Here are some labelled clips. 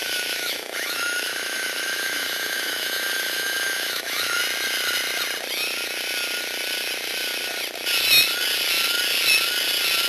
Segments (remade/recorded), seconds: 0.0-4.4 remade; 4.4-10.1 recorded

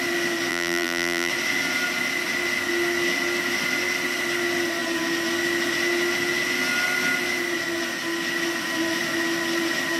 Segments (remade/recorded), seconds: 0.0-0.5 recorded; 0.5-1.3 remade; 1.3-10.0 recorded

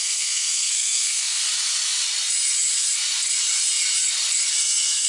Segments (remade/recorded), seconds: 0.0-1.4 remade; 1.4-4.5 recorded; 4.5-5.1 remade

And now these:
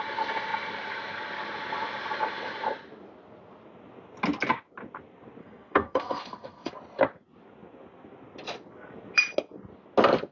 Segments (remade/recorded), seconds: 0.0-5.4 recorded; 5.4-6.7 remade; 6.7-10.3 recorded

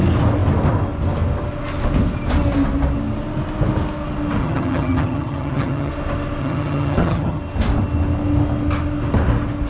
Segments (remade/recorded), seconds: 0.0-4.4 recorded; 4.4-5.9 remade; 5.9-6.4 recorded; 6.4-7.4 remade; 7.4-9.7 recorded

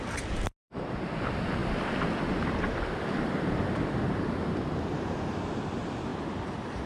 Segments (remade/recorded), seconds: 0.0-1.6 recorded; 1.6-5.2 remade; 5.2-6.1 recorded; 6.1-6.9 remade

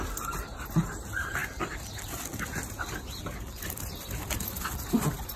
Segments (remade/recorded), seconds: 0.0-5.4 recorded

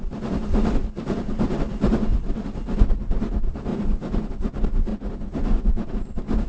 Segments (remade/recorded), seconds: 0.0-3.7 recorded; 3.7-4.3 remade; 4.3-4.9 recorded; 4.9-5.9 remade; 5.9-6.5 recorded